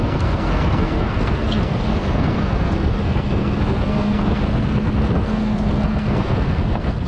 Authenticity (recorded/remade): remade